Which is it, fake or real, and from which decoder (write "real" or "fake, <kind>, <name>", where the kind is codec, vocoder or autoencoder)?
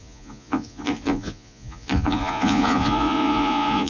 fake, vocoder, Vocos